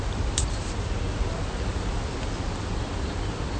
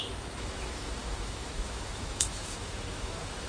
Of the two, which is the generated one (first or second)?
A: second